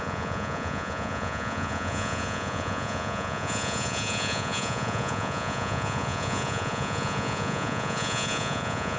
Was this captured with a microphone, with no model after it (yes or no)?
no